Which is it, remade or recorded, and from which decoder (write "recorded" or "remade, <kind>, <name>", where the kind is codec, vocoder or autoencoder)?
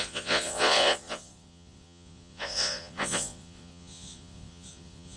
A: remade, vocoder, Vocos